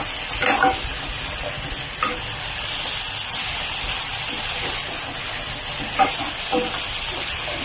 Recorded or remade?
recorded